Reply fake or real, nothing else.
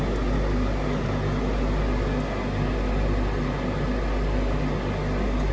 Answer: real